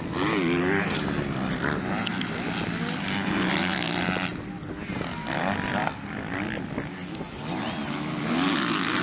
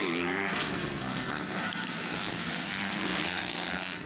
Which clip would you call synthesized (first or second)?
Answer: second